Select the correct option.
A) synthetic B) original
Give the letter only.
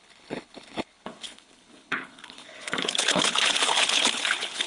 A